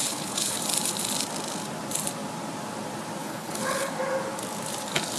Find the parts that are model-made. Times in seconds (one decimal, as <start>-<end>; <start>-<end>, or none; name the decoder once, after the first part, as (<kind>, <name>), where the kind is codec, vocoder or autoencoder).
0.0-0.6 (codec, HILCodec); 3.2-3.9